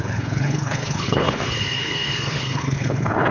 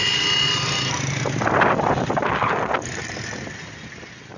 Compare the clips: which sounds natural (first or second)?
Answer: second